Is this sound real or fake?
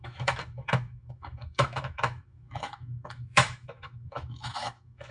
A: fake